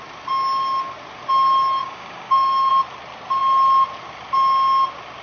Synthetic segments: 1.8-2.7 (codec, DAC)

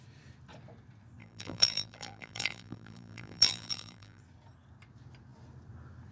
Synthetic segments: 1.2-4.2 (vocoder, BigVGAN v2)

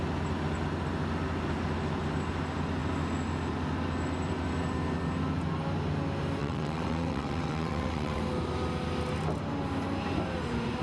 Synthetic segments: 6.4-8.2 (vocoder, WaveNeXt)

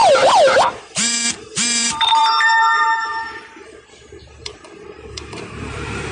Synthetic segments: 0.7-6.1 (vocoder, BigVGAN v2)

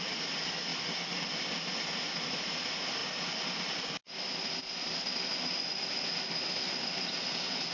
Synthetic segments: none

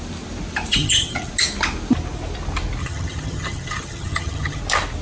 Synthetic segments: 0.7-1.3 (vocoder, HiFi-GAN); 2.8-4.6

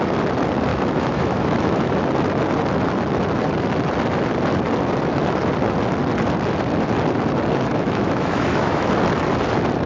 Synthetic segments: 0.7-1.9 (autoencoder, DAC-VAE); 7.7-8.9

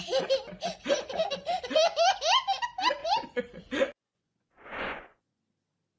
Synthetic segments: 3.0-5.4 (vocoder, Vocos)